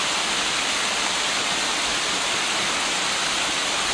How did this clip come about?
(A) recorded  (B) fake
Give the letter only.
A